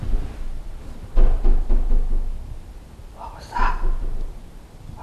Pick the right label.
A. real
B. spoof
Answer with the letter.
A